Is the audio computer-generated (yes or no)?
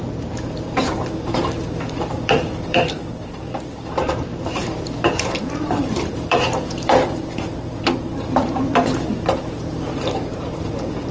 yes